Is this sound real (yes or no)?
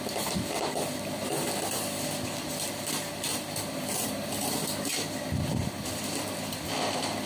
yes